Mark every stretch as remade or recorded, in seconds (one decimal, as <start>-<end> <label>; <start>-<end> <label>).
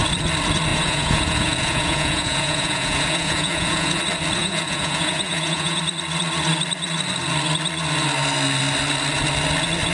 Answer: 0.0-0.7 recorded; 0.7-4.0 remade; 4.0-4.4 recorded; 4.4-5.8 remade; 5.8-9.9 recorded